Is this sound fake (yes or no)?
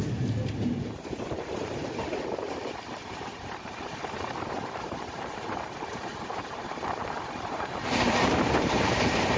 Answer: yes